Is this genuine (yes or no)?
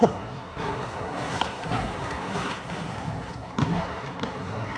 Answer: no